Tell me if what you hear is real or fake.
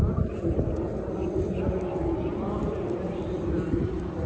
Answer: fake